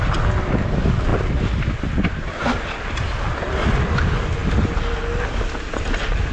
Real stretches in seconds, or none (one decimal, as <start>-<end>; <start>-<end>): 0.0-6.3